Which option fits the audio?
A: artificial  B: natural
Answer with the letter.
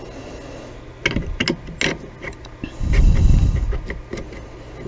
B